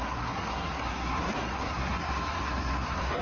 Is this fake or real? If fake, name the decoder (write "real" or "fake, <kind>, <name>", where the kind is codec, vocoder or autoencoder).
fake, codec, SNAC